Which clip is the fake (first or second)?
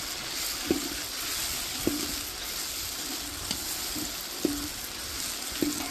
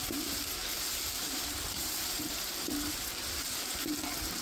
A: second